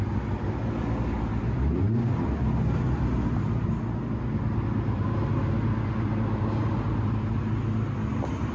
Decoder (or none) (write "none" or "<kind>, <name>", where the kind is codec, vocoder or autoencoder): none